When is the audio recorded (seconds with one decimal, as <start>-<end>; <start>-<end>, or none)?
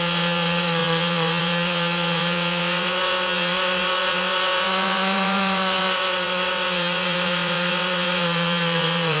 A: none